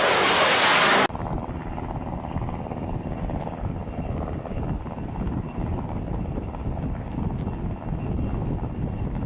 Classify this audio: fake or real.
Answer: real